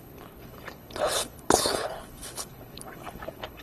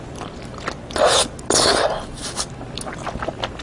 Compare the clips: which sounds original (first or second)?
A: second